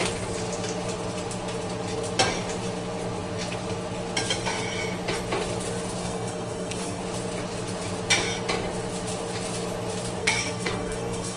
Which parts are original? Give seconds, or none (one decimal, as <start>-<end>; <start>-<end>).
0.0-6.0; 7.0-10.2